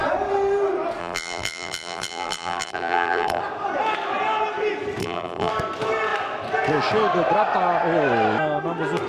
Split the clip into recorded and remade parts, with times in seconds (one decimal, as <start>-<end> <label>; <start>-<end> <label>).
0.0-1.0 recorded; 1.0-3.4 remade; 3.4-5.0 recorded; 5.0-5.5 remade; 5.5-9.1 recorded